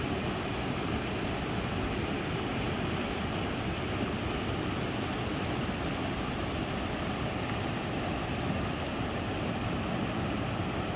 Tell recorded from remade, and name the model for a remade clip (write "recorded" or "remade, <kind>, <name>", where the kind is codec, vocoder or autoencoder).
recorded